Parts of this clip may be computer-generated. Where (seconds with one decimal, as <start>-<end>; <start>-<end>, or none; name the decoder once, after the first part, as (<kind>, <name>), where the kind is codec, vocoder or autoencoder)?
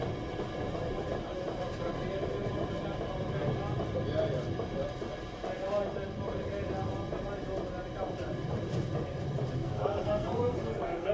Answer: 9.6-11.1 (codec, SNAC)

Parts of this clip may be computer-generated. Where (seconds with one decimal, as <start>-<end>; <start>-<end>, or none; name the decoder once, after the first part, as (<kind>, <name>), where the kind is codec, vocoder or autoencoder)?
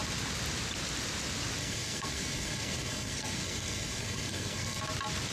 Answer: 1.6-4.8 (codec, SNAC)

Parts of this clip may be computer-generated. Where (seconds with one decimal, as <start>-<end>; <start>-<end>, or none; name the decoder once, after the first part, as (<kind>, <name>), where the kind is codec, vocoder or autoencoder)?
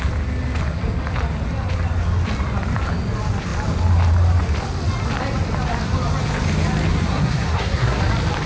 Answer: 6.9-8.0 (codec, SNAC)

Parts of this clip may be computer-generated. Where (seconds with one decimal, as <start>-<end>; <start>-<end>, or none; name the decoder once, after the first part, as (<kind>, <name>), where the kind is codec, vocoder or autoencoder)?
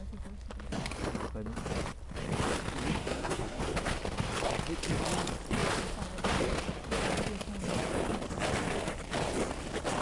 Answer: 3.0-3.6 (codec, SNAC)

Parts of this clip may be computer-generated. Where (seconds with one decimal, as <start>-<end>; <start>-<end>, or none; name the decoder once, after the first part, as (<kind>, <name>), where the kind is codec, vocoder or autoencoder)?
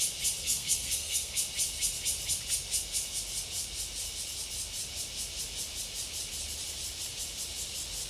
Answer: 0.4-1.4 (codec, SNAC)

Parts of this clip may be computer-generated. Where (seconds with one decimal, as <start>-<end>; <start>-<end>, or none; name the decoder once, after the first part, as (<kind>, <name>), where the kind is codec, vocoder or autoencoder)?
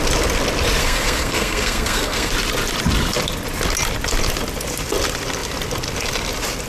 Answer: 0.8-2.3 (codec, SNAC)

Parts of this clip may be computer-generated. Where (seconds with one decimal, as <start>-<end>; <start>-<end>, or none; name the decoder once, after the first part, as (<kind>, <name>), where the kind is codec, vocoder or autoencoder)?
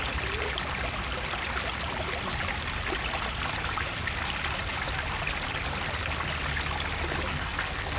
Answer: 7.3-8.0 (codec, SNAC)